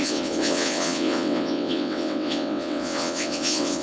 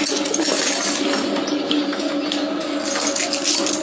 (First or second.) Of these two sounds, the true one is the second